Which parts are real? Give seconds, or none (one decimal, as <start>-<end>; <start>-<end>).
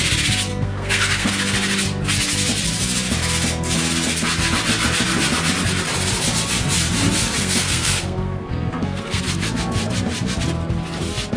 0.0-0.5; 1.3-7.4; 9.2-11.4